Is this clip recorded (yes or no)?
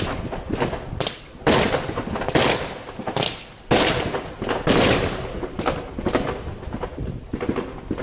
yes